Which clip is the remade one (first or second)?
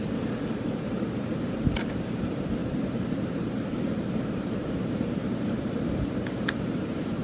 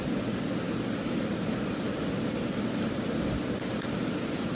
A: first